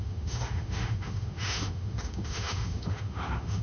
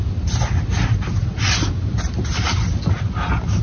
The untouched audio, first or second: second